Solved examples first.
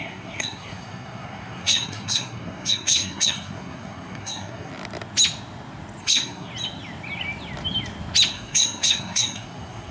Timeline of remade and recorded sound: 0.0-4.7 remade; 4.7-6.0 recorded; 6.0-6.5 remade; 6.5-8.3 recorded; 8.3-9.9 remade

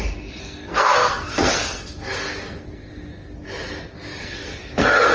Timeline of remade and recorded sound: 0.0-3.1 remade; 3.1-4.2 recorded; 4.2-5.1 remade

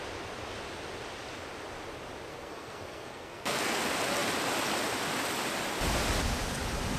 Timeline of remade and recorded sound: 0.0-2.3 recorded; 2.3-3.8 remade; 3.8-7.0 recorded

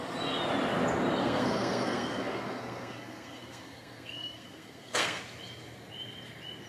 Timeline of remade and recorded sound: 0.0-1.2 recorded; 1.2-5.2 remade; 5.2-6.7 recorded

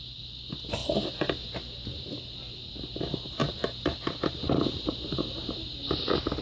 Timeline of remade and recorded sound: 0.0-6.4 recorded